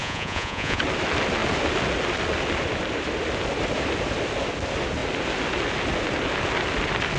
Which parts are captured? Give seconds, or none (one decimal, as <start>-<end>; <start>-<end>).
0.8-7.2